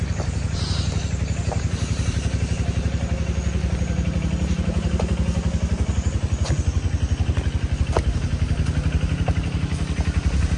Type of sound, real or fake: real